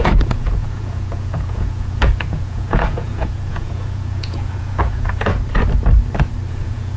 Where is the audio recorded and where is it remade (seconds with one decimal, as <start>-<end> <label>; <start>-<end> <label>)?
0.0-5.3 remade; 5.3-6.5 recorded; 6.5-7.0 remade